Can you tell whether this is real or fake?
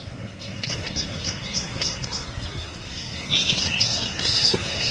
fake